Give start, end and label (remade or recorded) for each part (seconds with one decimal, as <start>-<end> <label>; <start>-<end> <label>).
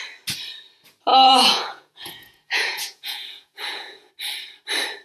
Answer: 0.0-1.1 recorded; 1.1-4.1 remade; 4.1-5.0 recorded